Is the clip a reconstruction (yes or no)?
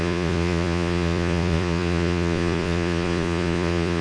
yes